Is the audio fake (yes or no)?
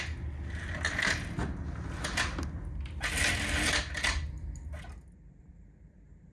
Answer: no